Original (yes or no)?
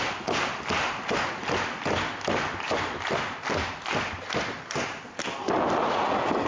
yes